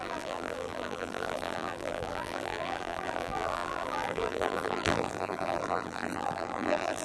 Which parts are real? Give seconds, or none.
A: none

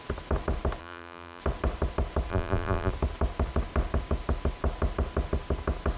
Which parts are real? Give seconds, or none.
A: 0.0-0.8; 1.4-2.3; 2.9-6.0

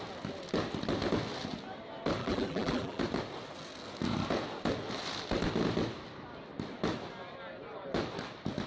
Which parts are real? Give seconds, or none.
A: 0.0-2.2; 3.0-8.7

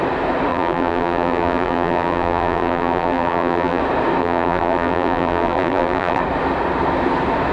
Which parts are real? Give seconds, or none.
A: 0.0-0.5; 3.8-4.2; 6.2-7.5

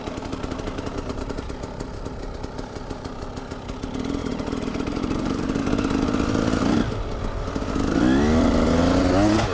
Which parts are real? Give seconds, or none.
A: 0.0-4.3; 5.6-9.5